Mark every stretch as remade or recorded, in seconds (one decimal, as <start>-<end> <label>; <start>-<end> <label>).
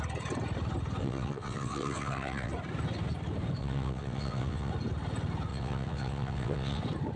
0.0-1.0 recorded; 1.0-2.5 remade; 2.5-3.6 recorded; 3.6-4.7 remade; 4.7-5.5 recorded; 5.5-6.8 remade; 6.8-7.2 recorded